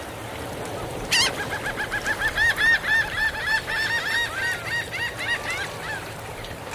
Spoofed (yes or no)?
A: no